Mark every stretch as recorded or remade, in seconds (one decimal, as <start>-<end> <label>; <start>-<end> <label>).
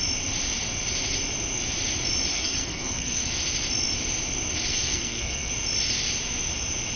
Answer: 0.0-2.3 recorded; 2.3-3.3 remade; 3.3-4.7 recorded; 4.7-5.5 remade; 5.5-7.0 recorded